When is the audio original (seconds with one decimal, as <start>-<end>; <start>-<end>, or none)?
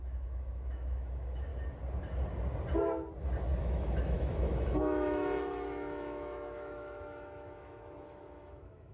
1.5-3.6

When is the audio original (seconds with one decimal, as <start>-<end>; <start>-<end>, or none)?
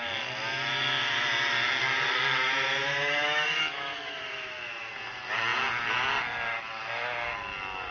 0.0-2.8; 4.9-7.9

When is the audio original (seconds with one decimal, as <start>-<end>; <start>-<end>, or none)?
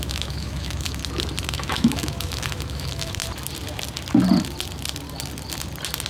1.0-1.5; 3.2-6.1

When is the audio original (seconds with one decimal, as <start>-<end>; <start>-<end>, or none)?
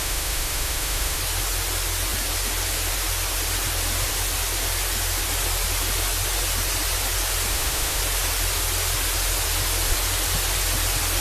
1.2-7.5; 8.0-11.2